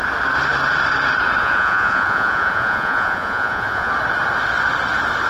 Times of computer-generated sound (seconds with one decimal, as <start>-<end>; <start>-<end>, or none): 1.4-3.9

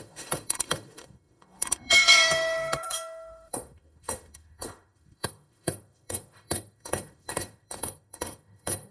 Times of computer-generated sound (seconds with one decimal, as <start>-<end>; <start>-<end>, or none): 0.0-8.9